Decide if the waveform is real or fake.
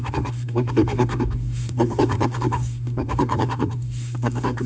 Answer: fake